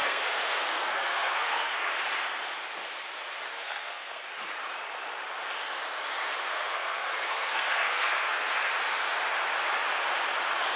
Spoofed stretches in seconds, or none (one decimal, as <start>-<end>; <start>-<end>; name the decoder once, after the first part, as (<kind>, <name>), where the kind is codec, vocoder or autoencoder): 0.0-1.9 (codec, SNAC); 3.5-4.3; 6.5-8.5